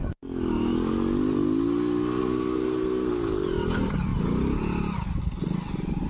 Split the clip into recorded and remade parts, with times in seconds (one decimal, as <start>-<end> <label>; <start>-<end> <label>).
0.0-2.2 recorded; 2.2-3.1 remade; 3.1-6.1 recorded